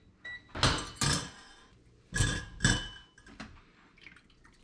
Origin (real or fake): real